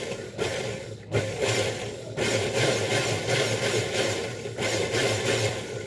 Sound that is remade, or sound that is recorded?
recorded